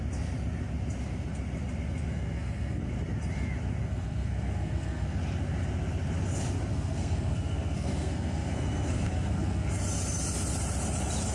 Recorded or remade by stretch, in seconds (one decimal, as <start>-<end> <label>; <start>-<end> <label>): 0.0-2.1 recorded; 2.1-2.8 remade; 2.8-3.8 recorded; 3.8-5.2 remade; 5.2-6.7 recorded; 6.7-9.7 remade; 9.7-11.3 recorded